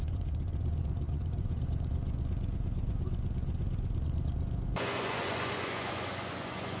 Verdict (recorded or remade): remade